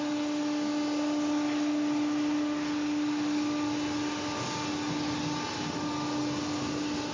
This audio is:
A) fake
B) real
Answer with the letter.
B